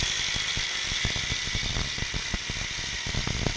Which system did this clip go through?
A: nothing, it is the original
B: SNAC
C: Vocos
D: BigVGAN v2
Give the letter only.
A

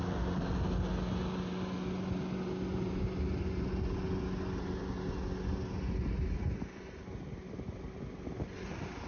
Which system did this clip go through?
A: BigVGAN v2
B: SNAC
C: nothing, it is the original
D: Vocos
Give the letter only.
C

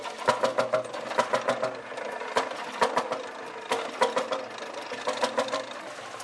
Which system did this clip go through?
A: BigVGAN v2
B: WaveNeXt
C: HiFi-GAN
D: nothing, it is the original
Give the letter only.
D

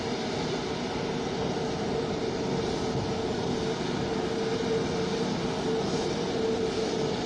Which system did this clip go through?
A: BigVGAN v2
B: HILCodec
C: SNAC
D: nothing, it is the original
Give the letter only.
D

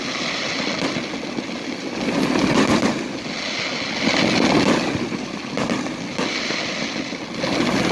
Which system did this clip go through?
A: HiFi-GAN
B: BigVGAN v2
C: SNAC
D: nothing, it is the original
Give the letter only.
D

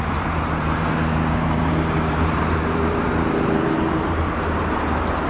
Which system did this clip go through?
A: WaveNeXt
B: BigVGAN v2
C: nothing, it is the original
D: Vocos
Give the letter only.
B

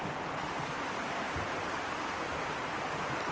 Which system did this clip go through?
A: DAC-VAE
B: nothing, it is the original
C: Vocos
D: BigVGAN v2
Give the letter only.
B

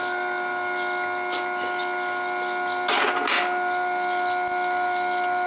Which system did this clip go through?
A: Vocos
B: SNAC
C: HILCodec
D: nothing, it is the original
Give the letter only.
D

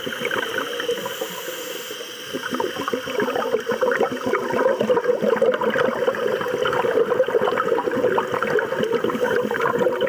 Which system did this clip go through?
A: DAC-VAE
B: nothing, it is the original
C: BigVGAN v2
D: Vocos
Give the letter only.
B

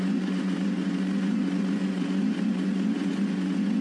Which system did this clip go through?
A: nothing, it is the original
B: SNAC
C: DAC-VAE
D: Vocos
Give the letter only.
D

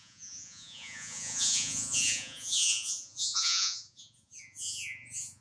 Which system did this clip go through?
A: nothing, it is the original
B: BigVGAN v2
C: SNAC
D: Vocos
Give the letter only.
D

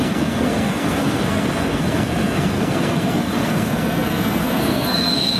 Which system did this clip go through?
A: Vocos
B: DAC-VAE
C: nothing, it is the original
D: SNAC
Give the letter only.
D